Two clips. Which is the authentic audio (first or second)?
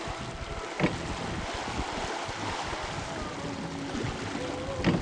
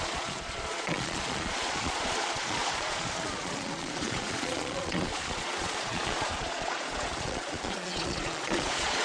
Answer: first